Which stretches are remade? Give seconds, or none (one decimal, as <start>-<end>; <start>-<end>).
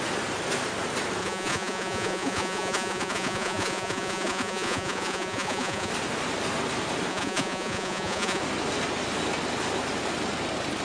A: 1.2-5.9; 7.1-8.4